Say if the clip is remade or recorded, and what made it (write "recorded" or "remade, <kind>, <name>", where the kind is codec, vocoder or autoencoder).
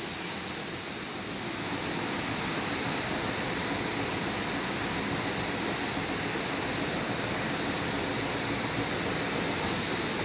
recorded